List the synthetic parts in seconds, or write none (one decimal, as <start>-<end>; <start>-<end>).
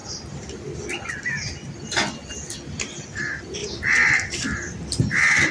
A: none